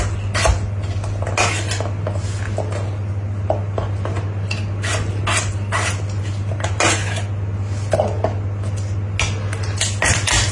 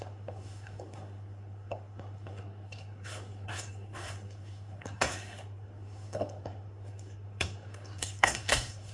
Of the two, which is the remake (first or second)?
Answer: second